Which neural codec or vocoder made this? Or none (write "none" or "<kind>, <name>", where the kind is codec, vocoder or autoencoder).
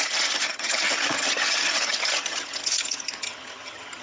vocoder, HiFi-GAN